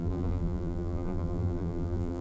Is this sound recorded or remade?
remade